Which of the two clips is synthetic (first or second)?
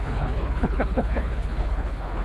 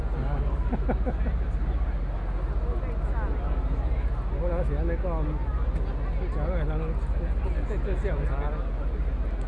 first